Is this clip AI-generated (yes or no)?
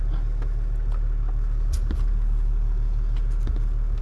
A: no